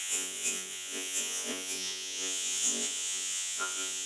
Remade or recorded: remade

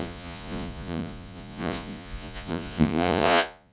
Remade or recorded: remade